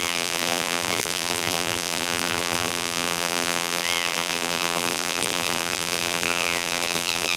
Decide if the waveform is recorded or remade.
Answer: remade